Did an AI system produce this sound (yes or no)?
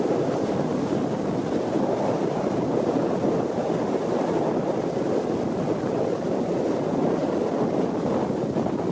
no